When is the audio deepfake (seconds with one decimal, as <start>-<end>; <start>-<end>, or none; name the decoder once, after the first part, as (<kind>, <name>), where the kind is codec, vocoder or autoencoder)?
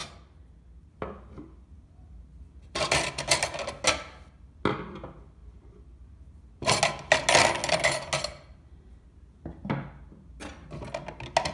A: none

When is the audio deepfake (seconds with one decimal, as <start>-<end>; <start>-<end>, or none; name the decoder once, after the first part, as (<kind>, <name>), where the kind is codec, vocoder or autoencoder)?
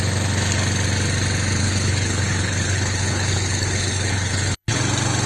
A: 1.6-4.8 (codec, HILCodec)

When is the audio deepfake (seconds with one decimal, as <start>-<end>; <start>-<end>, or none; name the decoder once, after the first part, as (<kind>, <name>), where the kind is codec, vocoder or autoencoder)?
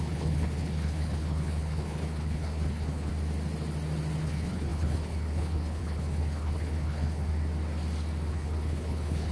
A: 0.0-3.1 (codec, HILCodec); 4.2-7.3; 8.3-9.3